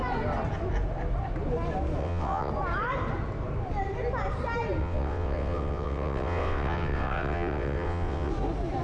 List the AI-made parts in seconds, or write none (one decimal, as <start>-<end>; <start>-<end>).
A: 2.0-2.5; 4.8-8.3